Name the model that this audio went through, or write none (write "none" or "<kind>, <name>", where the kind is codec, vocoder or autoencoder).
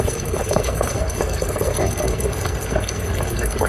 codec, SNAC